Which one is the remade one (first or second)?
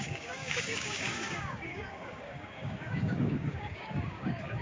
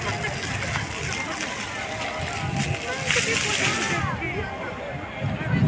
first